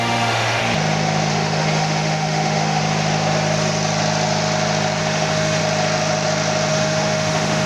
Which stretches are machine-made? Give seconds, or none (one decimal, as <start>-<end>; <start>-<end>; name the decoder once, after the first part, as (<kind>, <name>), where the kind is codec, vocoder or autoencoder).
0.0-0.6 (autoencoder, DAC-VAE); 1.3-2.8; 5.0-5.6; 6.7-7.7